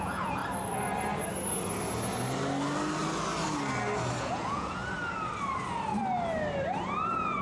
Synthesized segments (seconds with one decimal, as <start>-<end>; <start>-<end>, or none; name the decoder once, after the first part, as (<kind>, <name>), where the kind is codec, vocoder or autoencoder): 0.0-0.4 (vocoder, Vocos); 4.2-4.8